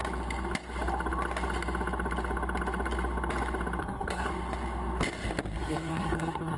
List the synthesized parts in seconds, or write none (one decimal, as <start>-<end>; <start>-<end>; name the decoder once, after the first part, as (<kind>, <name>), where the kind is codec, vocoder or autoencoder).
3.8-4.3 (codec, SNAC); 5.6-6.6